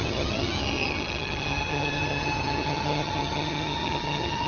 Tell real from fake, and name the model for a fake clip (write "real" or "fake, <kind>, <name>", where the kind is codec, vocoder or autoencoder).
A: fake, vocoder, HiFi-GAN